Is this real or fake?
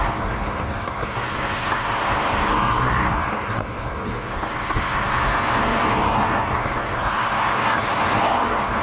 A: fake